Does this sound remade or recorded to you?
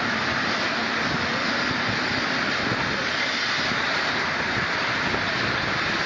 recorded